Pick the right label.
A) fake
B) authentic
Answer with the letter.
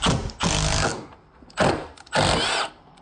B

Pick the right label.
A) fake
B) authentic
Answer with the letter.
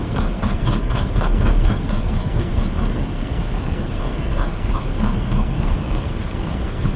A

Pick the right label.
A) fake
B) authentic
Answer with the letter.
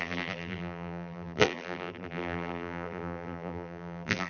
A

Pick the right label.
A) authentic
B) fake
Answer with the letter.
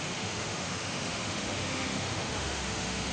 B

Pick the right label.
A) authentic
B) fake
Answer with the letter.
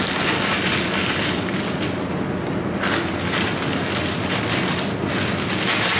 A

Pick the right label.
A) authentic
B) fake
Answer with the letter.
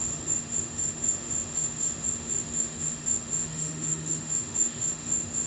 B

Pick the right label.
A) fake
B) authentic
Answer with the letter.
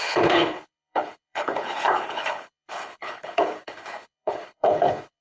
A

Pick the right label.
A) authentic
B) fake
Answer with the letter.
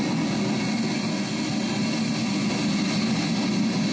A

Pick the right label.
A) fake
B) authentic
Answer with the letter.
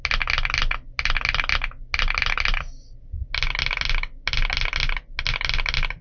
B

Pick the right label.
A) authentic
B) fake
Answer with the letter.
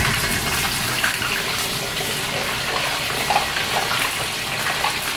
B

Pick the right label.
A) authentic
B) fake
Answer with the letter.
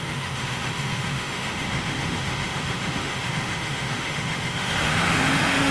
B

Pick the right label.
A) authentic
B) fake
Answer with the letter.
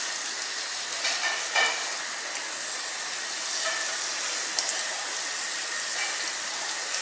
A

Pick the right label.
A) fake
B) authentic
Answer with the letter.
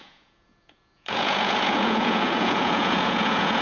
A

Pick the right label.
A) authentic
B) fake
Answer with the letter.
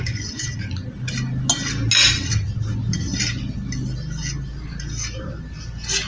A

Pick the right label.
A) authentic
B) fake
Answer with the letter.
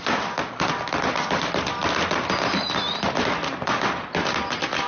A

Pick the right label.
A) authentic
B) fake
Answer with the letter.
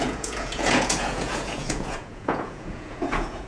B